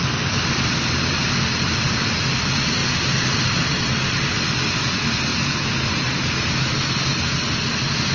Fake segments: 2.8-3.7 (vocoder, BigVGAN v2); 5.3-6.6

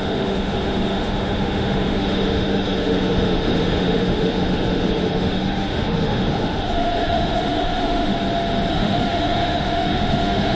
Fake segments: 0.0-8.1 (autoencoder, DAC-VAE); 8.7-10.5

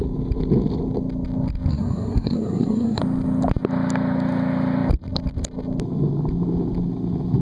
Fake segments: 1.7-3.0 (codec, SNAC)

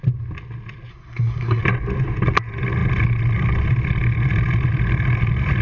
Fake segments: 0.9-1.6 (codec, SNAC)